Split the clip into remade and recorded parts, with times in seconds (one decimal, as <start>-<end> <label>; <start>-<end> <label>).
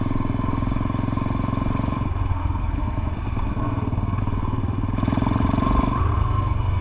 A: 0.0-2.3 recorded; 2.3-4.2 remade; 4.2-6.1 recorded; 6.1-6.8 remade